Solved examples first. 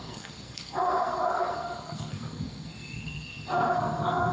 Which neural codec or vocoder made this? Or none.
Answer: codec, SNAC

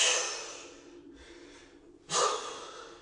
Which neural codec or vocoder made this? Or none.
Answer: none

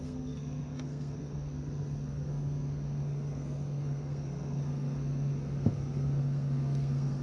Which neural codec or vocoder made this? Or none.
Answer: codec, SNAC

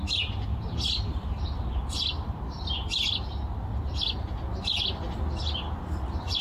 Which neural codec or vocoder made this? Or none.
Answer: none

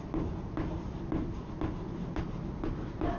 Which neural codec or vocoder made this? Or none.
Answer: none